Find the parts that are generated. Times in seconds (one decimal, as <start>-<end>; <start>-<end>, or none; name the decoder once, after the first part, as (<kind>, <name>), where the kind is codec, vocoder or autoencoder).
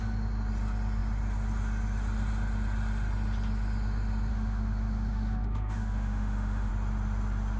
4.3-6.7 (autoencoder, DAC-VAE)